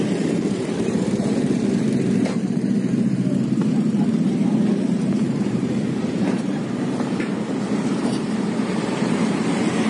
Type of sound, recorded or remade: remade